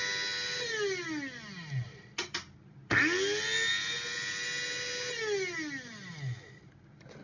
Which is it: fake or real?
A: real